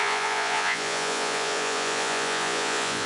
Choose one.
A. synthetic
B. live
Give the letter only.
A